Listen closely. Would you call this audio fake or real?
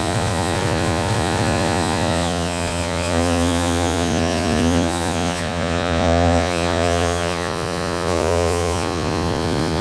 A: fake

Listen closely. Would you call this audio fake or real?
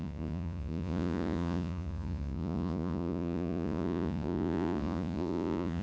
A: fake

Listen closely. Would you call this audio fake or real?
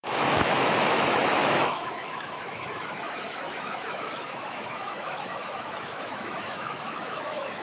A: fake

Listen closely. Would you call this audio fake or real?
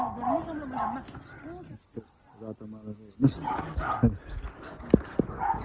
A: real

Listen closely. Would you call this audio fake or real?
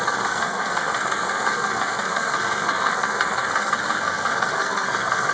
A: fake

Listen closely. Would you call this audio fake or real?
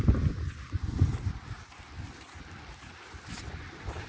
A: real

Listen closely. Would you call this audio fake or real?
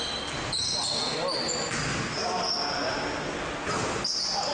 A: real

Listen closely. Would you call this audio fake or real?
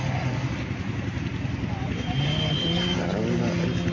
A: real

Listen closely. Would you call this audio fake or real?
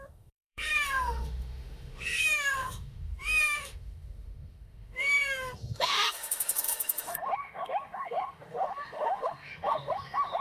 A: fake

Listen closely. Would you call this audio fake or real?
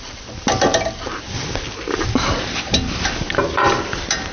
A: real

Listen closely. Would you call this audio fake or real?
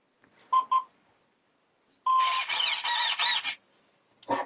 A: real